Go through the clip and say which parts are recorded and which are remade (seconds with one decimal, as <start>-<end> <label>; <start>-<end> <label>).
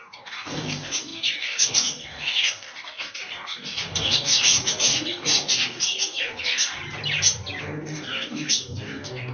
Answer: 0.0-6.8 remade; 6.8-7.6 recorded; 7.6-9.3 remade